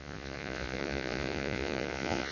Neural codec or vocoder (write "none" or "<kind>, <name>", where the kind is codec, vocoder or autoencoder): vocoder, Vocos